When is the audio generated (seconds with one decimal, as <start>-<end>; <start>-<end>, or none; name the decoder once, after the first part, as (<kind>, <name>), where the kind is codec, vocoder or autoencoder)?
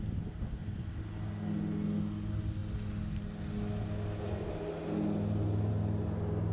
none